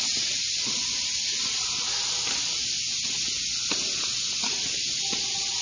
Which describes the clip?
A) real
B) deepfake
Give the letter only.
A